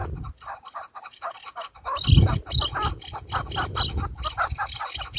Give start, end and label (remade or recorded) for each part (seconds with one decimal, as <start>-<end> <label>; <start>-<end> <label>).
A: 0.0-5.2 recorded